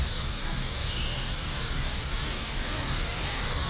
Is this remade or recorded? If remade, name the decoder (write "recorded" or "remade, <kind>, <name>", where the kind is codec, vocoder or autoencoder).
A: remade, codec, DAC